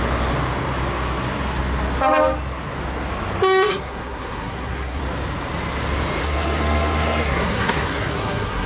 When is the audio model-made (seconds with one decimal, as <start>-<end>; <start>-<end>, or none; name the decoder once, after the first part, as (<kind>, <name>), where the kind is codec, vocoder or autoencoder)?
3.7-5.0 (codec, SNAC); 6.2-8.7